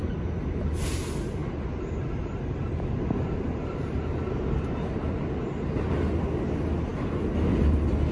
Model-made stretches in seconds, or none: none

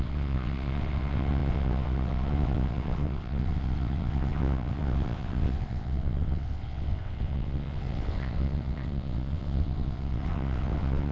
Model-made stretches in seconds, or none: 0.0-11.1

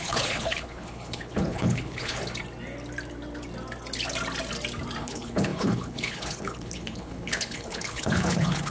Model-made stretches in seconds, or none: 0.0-2.2; 5.0-8.7

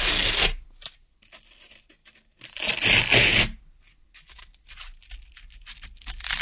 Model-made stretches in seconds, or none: none

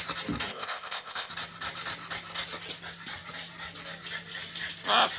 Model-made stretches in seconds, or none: 0.5-1.3

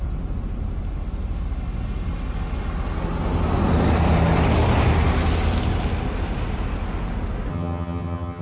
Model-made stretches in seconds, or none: 7.5-8.4